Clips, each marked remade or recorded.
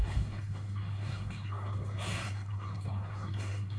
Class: remade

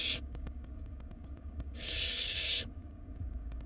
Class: remade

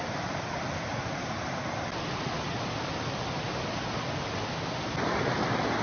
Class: recorded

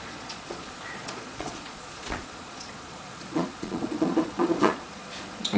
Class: remade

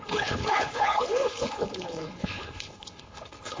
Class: remade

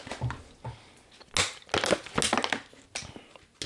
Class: recorded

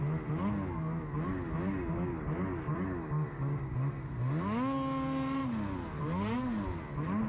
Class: recorded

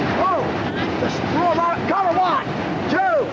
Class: recorded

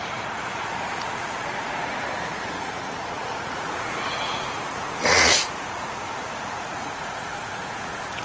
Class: remade